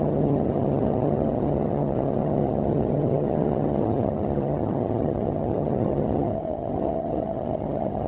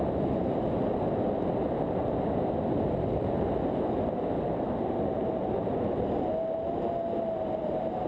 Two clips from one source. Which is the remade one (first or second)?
first